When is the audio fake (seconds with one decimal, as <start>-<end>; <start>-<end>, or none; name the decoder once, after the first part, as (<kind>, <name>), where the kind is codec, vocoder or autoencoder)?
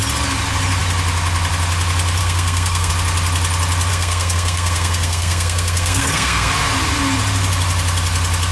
2.2-2.9 (codec, SNAC); 3.9-6.5